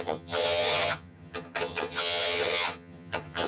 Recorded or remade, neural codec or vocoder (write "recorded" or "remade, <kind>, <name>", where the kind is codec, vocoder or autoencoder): remade, vocoder, HiFi-GAN